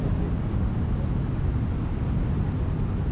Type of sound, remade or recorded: recorded